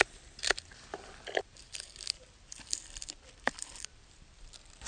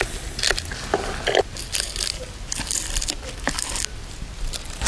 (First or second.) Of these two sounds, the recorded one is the second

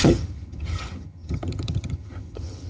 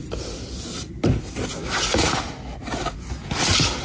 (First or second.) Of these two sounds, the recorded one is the second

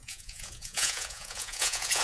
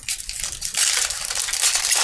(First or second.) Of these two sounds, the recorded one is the second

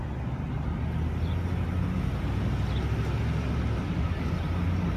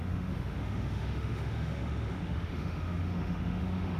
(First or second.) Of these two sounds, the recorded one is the first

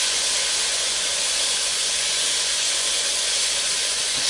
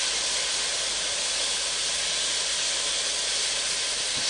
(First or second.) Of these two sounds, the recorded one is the second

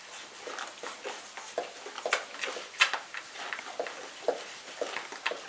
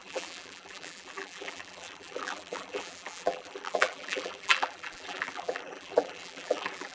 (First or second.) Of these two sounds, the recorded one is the first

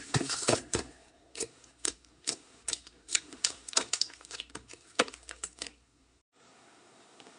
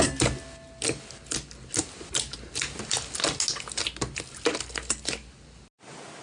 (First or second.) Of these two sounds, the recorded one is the second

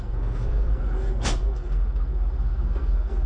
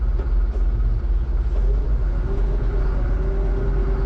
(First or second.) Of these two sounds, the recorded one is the second